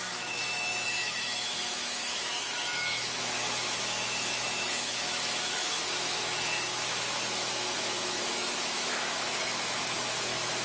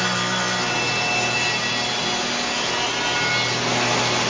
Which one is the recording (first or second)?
second